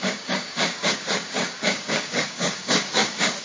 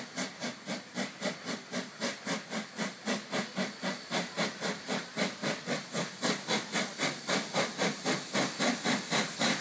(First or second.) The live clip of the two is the second